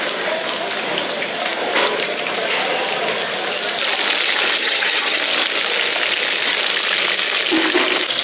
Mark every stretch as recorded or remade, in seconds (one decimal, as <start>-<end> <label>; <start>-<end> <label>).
0.0-4.6 recorded; 4.6-5.2 remade; 5.2-8.2 recorded